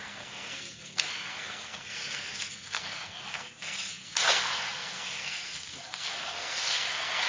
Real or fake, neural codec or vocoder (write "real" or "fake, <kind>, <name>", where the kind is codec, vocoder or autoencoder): fake, codec, SNAC